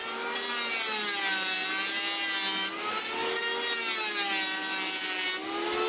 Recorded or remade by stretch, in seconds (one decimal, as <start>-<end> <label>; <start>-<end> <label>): 0.0-5.9 recorded